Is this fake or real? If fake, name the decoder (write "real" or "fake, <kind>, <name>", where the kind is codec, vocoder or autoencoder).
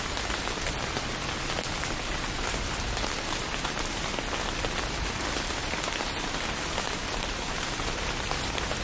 real